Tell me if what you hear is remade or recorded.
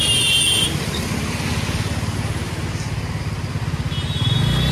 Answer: recorded